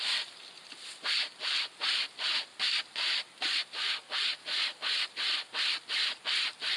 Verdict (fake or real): fake